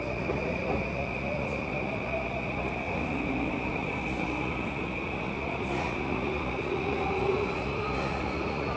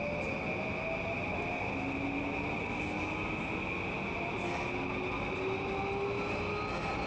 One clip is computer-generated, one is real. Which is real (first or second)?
second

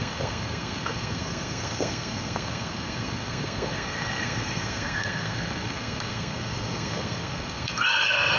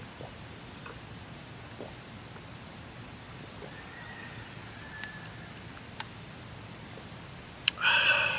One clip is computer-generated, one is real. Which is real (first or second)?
second